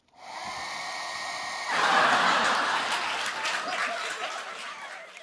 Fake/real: real